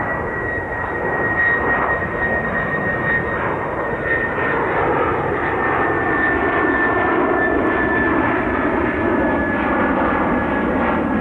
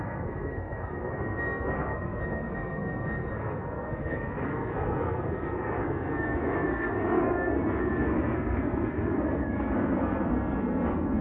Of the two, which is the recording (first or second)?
first